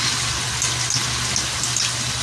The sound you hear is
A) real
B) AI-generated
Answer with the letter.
A